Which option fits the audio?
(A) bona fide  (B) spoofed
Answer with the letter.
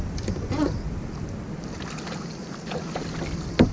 A